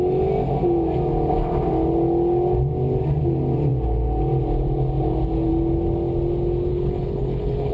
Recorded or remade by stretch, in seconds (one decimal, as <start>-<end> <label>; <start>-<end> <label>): 0.0-6.7 recorded; 6.7-7.7 remade